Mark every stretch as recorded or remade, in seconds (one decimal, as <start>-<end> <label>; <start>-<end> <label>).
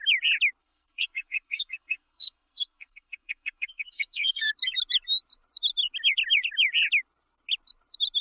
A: 0.0-0.6 recorded; 0.6-4.5 remade; 4.5-8.2 recorded